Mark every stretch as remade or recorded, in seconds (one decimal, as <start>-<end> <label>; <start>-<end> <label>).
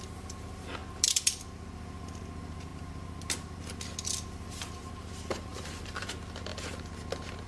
0.0-5.5 recorded; 5.5-6.1 remade; 6.1-7.5 recorded